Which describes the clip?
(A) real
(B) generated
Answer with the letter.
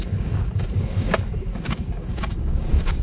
B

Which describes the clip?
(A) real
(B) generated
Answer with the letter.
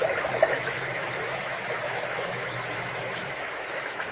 B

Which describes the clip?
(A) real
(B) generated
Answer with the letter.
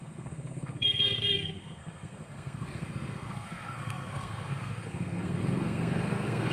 B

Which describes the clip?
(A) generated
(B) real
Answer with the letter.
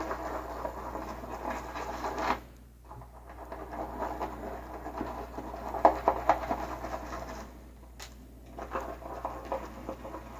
B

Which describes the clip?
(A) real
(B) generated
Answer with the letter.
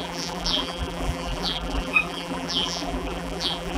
B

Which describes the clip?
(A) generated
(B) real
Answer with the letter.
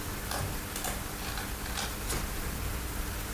B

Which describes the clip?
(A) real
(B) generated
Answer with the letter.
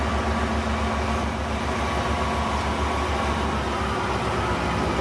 A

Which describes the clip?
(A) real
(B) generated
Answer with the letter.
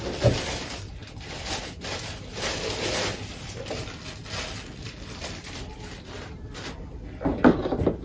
A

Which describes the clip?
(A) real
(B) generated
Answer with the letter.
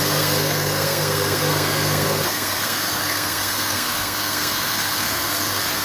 B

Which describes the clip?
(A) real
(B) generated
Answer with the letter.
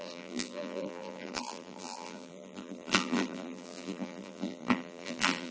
B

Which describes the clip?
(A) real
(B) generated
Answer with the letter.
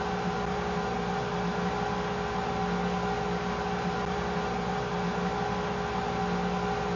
A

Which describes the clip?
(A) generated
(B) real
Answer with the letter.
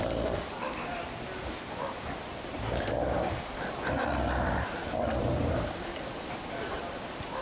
B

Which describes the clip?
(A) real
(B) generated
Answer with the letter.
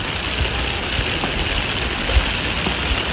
A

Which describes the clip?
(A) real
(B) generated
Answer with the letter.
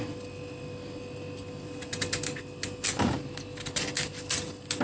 A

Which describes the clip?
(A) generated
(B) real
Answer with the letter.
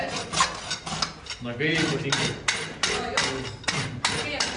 B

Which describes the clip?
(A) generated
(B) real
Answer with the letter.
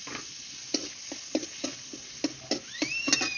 B